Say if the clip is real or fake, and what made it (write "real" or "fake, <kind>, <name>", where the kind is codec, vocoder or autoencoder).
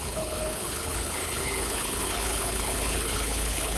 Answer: fake, codec, HILCodec